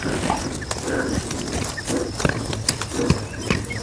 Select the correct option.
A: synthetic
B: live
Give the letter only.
B